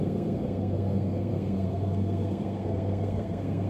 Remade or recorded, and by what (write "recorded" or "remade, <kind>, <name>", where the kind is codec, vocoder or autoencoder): remade, codec, SNAC